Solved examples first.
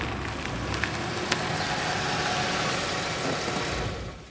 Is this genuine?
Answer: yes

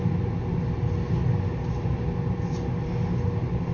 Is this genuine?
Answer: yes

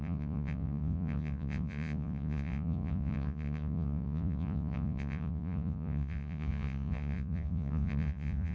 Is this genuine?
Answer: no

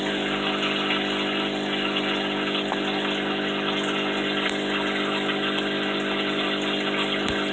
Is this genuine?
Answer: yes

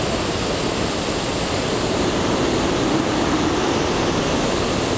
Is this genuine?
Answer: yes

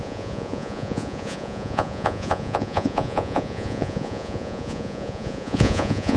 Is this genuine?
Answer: no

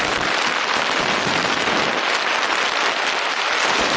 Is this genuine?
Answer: yes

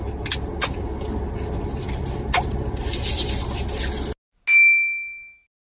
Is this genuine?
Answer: yes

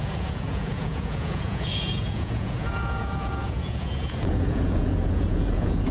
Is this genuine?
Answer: no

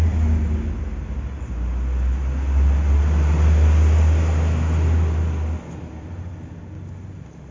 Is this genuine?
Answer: yes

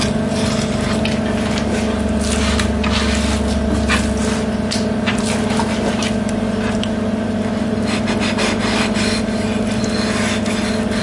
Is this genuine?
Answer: yes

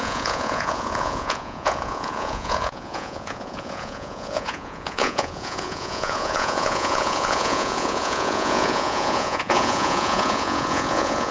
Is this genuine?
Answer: no